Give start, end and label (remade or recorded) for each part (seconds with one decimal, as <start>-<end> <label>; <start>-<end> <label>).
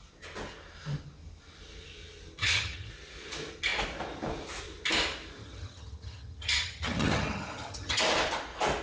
0.0-2.4 recorded; 2.4-2.9 remade; 2.9-5.4 recorded; 5.4-8.0 remade; 8.0-8.8 recorded